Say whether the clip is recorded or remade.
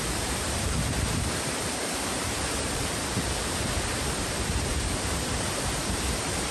remade